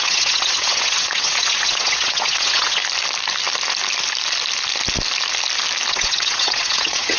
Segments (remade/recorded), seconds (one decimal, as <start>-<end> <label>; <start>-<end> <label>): 0.0-2.8 remade; 2.8-5.9 recorded; 5.9-7.2 remade